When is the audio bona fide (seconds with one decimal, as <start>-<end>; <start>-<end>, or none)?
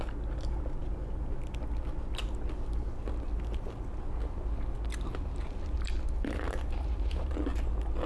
0.0-8.1